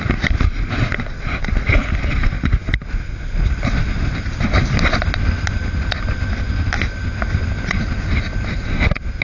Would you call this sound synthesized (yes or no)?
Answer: no